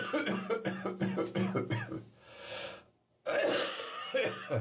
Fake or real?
real